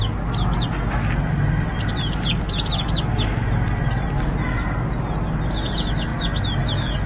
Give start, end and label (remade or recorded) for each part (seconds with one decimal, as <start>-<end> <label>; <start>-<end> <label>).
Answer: 0.0-7.1 recorded